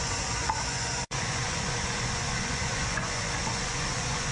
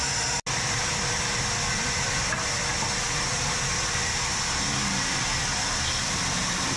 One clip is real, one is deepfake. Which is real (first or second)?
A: second